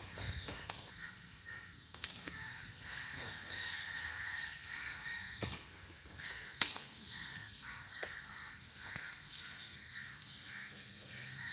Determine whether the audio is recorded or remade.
remade